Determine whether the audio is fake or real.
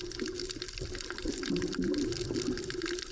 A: real